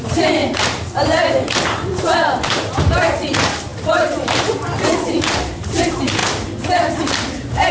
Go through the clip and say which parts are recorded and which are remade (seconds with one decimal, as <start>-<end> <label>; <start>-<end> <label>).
0.0-6.2 remade; 6.2-7.1 recorded; 7.1-7.7 remade